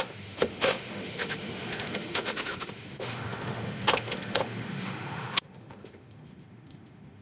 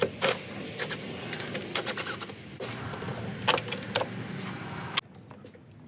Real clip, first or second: second